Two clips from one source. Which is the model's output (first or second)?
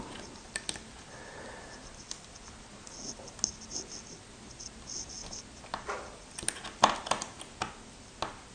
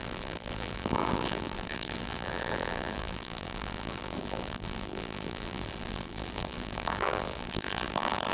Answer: second